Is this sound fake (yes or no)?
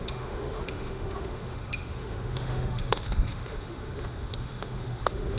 yes